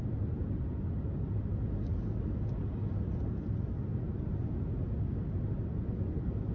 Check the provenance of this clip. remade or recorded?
recorded